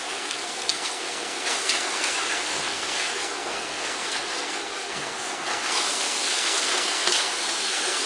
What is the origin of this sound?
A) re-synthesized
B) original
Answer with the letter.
A